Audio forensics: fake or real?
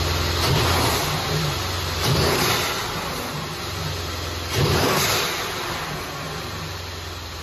real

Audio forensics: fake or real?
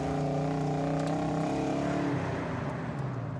real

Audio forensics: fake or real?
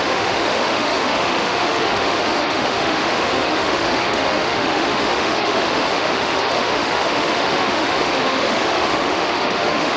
fake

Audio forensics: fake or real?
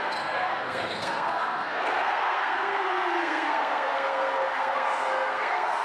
fake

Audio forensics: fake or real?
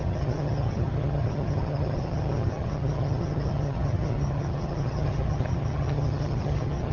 fake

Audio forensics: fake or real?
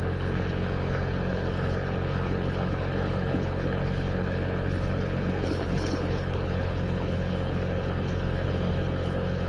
fake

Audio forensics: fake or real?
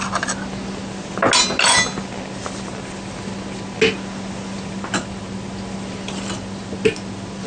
real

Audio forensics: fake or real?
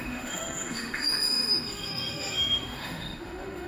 fake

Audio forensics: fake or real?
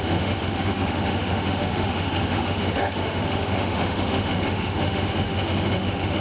fake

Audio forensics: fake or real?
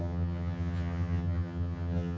fake